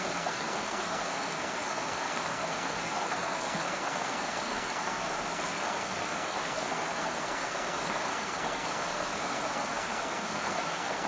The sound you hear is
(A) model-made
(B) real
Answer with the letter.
A